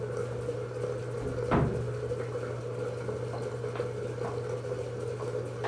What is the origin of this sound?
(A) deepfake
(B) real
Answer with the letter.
B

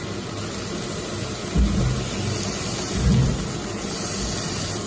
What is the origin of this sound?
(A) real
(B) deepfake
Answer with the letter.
A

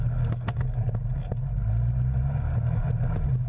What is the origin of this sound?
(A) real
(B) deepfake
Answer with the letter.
A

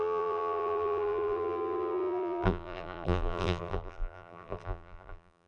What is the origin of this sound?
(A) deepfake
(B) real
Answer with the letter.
A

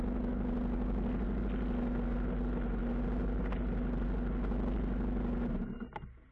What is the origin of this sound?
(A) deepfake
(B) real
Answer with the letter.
B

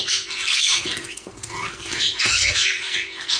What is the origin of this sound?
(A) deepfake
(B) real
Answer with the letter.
A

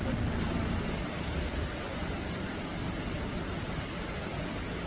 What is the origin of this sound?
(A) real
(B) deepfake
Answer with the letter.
A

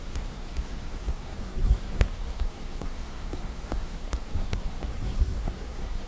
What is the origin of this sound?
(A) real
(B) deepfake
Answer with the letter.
B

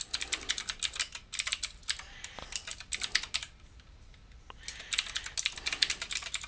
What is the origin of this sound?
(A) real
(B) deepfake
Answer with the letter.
A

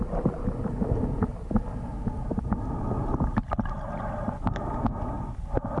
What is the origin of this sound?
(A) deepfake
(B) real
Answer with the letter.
B